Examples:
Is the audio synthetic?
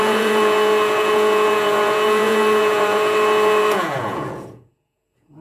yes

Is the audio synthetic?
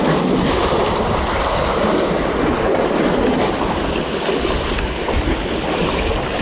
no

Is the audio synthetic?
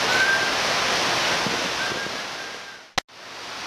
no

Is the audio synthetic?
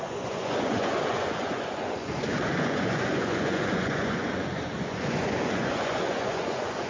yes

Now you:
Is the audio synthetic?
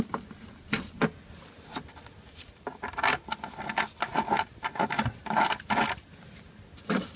no